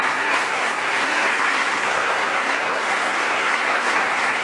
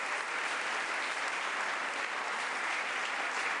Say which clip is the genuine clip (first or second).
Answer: second